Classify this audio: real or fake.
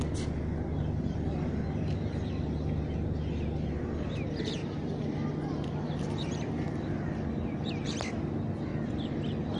real